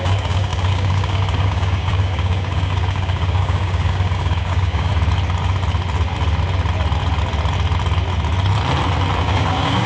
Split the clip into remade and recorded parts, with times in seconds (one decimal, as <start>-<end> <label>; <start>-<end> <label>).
0.0-4.9 remade; 4.9-9.2 recorded; 9.2-9.9 remade